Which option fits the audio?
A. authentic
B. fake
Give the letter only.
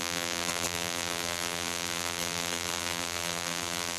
B